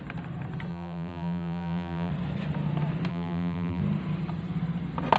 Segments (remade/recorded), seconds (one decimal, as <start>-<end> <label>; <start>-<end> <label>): 0.0-0.7 recorded; 0.7-2.1 remade; 2.1-3.1 recorded; 3.1-3.8 remade; 3.8-5.2 recorded

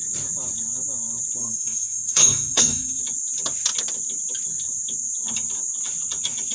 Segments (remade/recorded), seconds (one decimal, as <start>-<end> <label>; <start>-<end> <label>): 0.0-1.4 recorded; 1.4-3.0 remade; 3.0-6.5 recorded

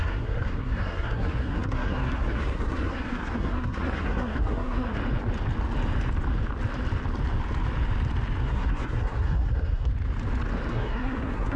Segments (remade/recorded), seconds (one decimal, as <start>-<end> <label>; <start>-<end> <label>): 0.0-5.0 remade; 5.0-8.4 recorded; 8.4-9.9 remade; 9.9-10.7 recorded; 10.7-11.6 remade

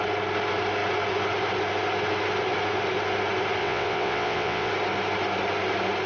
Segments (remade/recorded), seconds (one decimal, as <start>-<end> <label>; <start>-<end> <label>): 0.0-3.6 recorded; 3.6-4.7 remade; 4.7-6.1 recorded

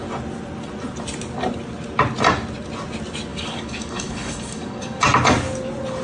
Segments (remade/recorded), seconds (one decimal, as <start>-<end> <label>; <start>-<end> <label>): 0.0-3.3 recorded; 3.3-5.0 remade; 5.0-6.0 recorded

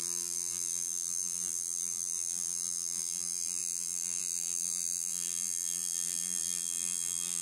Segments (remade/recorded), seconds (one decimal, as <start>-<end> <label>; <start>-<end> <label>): 0.0-7.4 remade

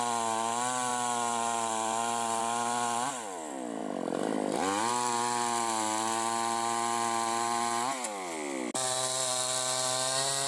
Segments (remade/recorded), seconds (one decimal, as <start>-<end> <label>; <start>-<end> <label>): 0.0-10.5 recorded